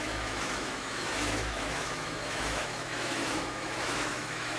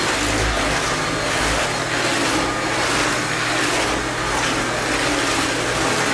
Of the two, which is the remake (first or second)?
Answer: first